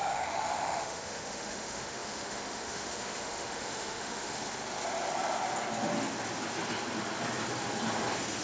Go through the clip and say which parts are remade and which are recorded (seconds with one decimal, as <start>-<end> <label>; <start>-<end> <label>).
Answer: 0.0-4.4 remade; 4.4-8.4 recorded